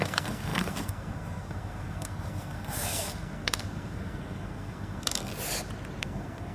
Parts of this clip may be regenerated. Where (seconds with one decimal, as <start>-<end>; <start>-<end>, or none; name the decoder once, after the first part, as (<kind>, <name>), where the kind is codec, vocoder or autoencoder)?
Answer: 0.0-5.3 (codec, SNAC); 6.0-6.5